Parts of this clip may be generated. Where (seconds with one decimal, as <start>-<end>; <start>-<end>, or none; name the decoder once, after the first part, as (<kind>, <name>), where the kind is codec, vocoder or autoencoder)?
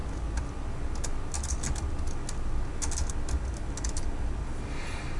none